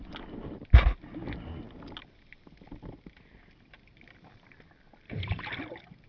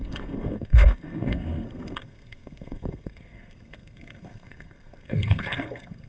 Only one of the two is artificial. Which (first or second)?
second